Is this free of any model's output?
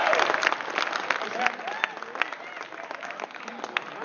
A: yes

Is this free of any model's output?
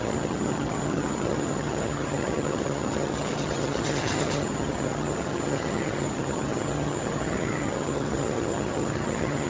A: no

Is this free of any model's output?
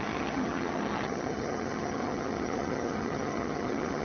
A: no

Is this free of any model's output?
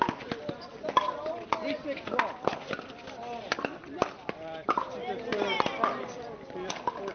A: yes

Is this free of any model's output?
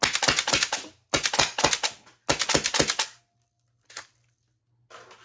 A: yes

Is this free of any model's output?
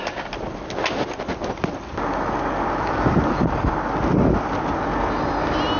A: yes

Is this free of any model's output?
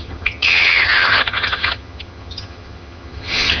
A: no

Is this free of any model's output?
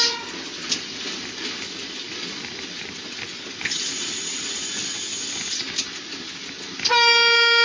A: yes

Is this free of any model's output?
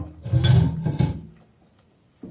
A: yes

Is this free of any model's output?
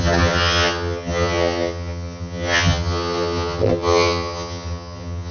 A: no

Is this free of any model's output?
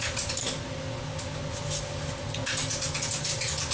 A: yes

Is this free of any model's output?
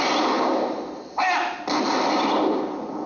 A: yes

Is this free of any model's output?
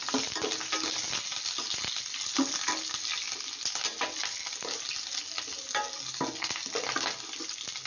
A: yes